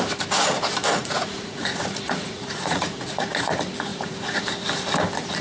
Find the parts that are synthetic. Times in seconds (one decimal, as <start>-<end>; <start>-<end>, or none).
1.0-3.5; 3.9-4.4